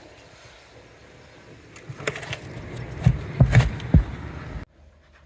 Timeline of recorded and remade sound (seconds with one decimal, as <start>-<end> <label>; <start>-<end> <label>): 0.0-5.3 recorded